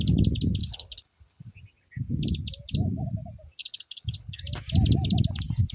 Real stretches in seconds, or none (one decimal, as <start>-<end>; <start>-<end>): 0.0-0.6; 1.5-3.6; 4.4-5.7